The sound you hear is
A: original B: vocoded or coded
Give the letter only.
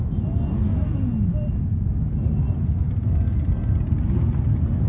A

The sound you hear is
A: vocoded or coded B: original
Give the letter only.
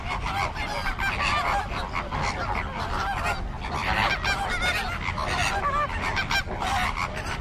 B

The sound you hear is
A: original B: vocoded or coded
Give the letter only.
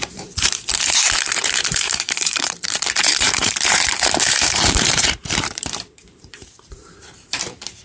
B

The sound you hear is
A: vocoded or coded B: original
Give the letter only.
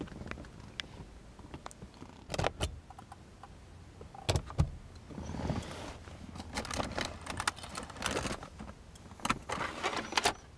B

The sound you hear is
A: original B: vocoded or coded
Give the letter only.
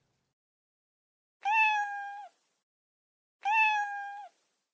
A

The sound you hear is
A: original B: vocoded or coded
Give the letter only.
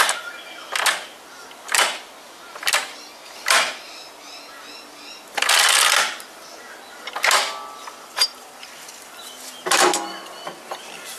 A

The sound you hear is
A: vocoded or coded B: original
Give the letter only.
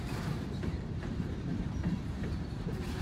A